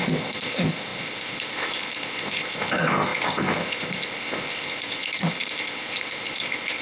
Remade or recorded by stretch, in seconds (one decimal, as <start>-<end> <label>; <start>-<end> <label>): 0.0-6.8 remade